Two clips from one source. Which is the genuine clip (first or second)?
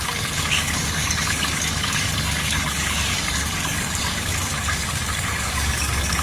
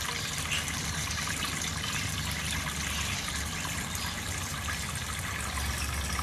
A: second